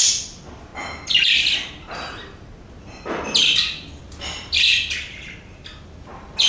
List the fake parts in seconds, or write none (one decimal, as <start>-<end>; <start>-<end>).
0.0-0.7; 4.0-6.5